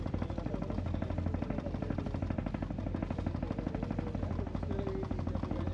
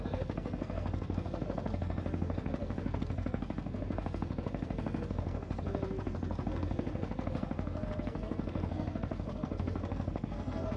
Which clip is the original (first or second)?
first